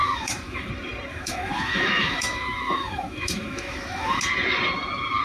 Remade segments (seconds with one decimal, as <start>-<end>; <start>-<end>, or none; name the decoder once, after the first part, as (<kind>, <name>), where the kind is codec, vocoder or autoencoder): 0.0-0.7 (autoencoder, DAC-VAE); 1.1-4.2